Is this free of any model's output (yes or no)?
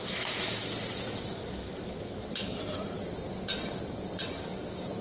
yes